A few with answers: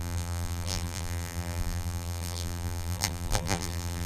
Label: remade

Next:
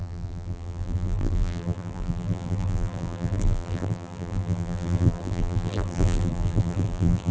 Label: remade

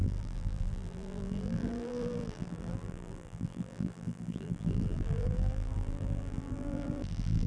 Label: remade